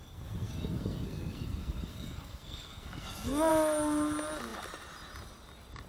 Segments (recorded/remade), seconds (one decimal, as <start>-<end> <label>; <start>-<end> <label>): 0.0-3.5 remade; 3.5-5.9 recorded